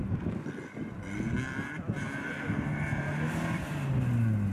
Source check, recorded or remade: recorded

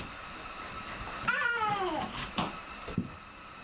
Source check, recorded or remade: remade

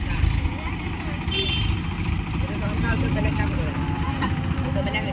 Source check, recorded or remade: remade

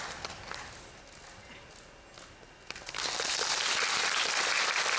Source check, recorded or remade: recorded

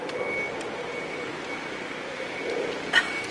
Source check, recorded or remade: recorded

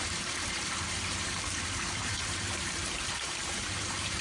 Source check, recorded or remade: remade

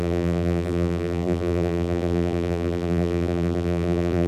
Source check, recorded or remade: remade